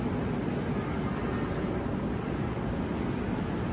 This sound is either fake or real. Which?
real